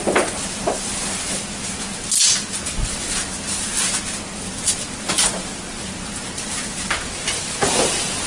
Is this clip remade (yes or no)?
no